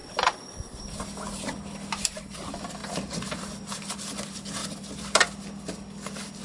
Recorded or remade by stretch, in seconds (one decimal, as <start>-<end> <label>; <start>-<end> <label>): 0.0-6.4 recorded